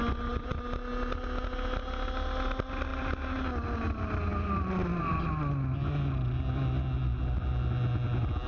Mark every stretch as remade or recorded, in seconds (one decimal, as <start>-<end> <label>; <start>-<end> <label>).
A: 0.0-8.5 recorded